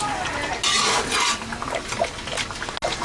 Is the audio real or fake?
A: real